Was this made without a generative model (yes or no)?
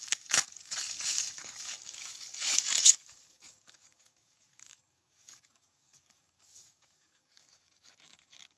no